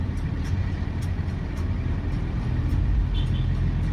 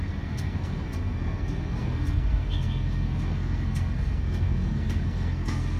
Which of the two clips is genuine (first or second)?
first